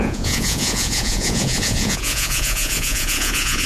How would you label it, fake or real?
fake